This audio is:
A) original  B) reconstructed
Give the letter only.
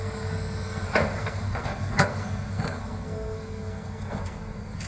B